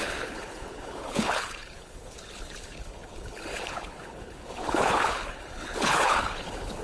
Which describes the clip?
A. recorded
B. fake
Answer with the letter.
B